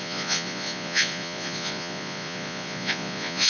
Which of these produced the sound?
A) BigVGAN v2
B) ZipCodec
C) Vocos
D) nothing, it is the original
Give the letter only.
C